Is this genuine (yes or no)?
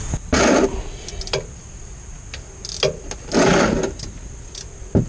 yes